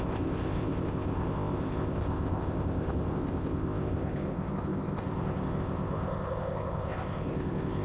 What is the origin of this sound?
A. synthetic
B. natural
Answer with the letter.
A